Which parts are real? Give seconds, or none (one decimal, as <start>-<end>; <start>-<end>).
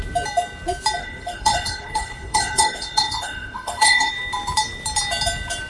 0.0-1.0; 4.1-5.7